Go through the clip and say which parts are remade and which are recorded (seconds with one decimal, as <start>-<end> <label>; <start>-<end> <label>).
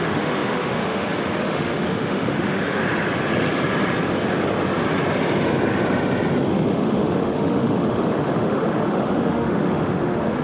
0.0-2.8 remade; 2.8-6.5 recorded; 6.5-10.4 remade